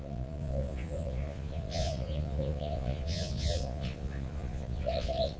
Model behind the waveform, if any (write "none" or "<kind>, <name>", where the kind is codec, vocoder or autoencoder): vocoder, Vocos